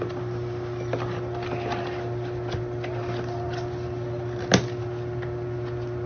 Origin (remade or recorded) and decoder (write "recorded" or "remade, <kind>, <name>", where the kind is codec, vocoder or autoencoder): recorded